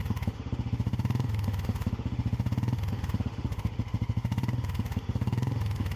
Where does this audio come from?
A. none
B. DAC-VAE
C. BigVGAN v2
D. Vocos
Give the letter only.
B